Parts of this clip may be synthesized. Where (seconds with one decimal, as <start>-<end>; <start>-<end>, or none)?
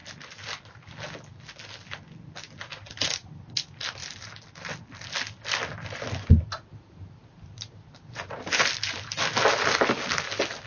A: 2.7-3.3; 6.7-8.6